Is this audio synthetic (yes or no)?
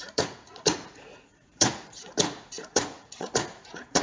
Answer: yes